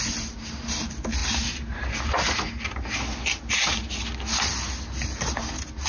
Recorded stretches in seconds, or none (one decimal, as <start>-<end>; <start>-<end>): 0.0-5.9